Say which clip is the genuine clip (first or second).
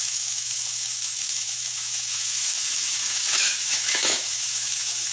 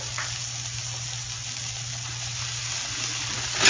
second